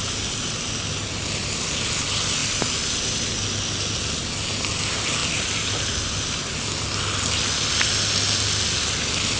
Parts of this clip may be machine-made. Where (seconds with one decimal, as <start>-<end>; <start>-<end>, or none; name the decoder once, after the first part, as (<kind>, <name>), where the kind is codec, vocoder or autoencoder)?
none